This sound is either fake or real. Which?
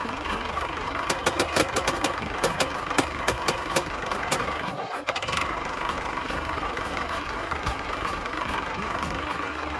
fake